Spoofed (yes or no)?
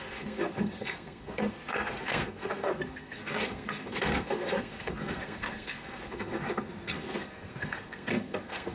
yes